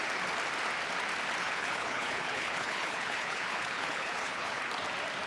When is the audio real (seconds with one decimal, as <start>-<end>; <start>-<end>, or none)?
0.0-1.4; 4.6-5.3